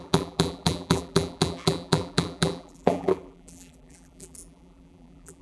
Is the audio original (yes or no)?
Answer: no